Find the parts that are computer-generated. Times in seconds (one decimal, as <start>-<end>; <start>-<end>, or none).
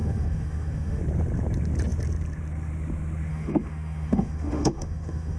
0.0-1.0; 3.3-5.4